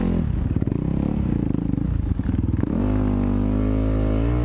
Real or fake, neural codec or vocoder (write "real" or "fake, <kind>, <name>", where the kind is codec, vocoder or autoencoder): real